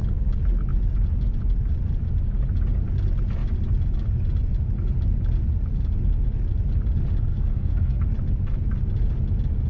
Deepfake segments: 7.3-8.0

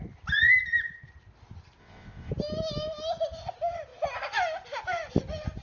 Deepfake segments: 1.8-2.3

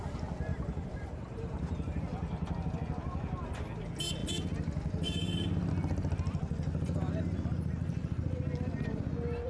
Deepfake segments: 0.5-2.0